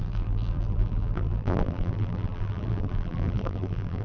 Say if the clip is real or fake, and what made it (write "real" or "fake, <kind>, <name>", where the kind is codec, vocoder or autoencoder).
fake, vocoder, BigVGAN v2